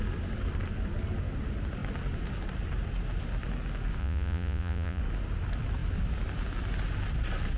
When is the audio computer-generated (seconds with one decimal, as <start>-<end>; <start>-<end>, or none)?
4.0-5.0